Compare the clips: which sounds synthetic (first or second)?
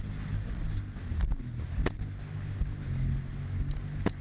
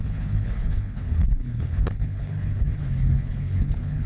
second